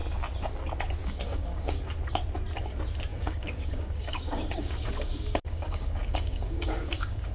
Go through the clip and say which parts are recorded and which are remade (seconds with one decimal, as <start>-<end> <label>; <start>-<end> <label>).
0.0-1.0 recorded; 1.0-1.8 remade; 1.8-3.1 recorded; 3.1-7.3 remade